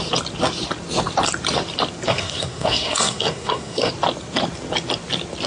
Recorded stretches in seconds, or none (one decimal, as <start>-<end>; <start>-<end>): 0.0-2.1; 3.9-5.5